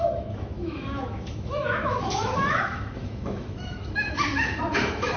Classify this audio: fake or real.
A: fake